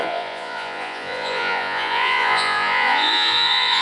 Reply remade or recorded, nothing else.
remade